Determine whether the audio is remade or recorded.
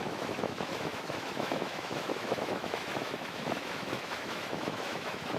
remade